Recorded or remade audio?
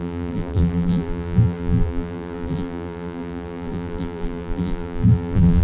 remade